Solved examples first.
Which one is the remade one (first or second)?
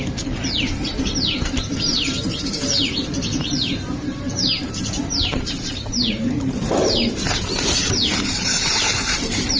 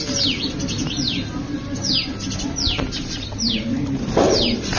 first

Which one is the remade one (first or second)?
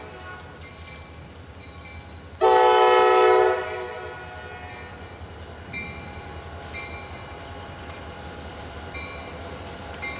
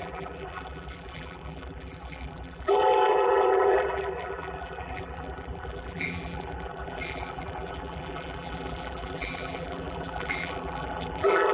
second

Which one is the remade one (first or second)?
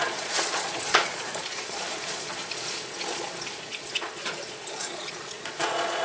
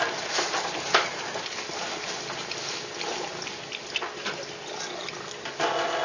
first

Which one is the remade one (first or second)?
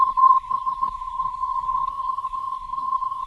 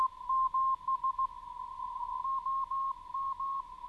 first